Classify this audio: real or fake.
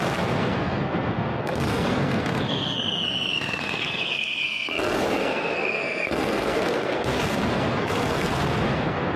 fake